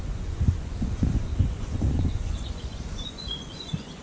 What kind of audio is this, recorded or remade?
remade